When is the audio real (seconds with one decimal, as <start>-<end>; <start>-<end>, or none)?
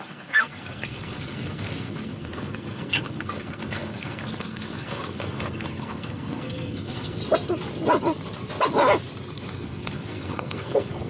7.2-9.5